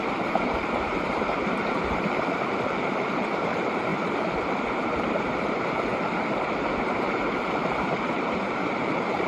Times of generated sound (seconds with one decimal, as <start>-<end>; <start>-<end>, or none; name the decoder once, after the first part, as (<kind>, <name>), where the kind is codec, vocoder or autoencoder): 0.0-5.9 (vocoder, BigVGAN v2); 6.4-9.3